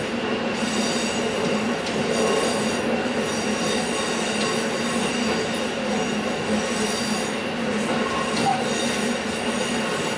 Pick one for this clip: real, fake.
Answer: real